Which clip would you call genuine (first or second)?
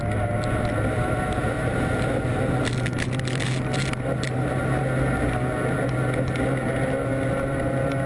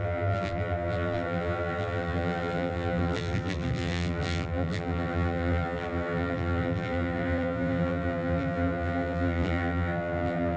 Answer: first